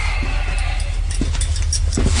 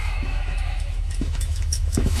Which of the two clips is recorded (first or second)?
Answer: first